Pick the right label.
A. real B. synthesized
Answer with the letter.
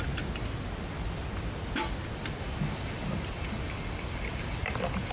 A